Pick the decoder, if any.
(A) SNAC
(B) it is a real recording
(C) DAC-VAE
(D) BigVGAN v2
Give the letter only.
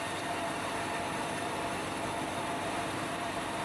D